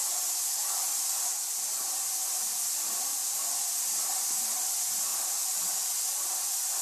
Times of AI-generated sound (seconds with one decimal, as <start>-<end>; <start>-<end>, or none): none